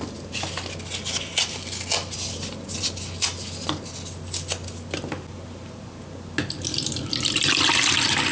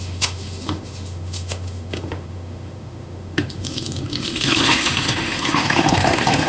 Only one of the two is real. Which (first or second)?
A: first